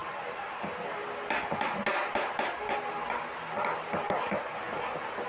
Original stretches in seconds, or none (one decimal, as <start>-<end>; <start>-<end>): 0.0-5.3